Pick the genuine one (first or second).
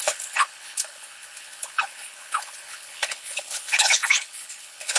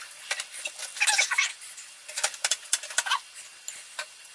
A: second